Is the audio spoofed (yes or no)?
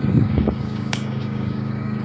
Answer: yes